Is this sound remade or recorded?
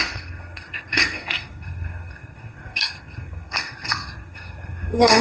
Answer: remade